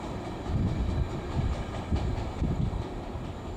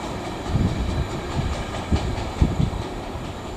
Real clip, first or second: first